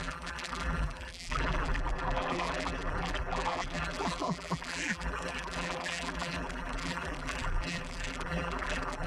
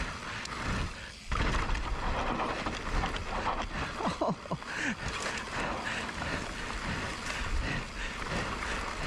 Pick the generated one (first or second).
first